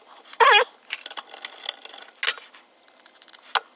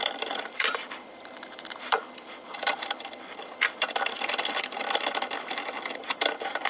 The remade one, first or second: second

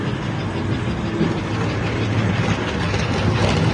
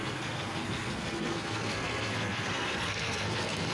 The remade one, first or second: second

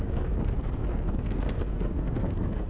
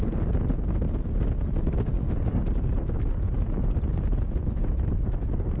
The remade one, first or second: first